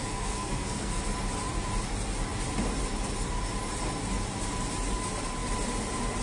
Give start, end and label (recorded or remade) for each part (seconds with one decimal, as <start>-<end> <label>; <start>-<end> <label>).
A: 0.0-1.0 remade; 1.0-6.2 recorded